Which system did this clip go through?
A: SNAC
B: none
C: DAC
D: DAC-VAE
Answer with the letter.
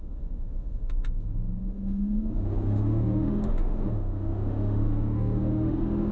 D